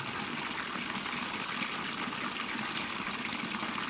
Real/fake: real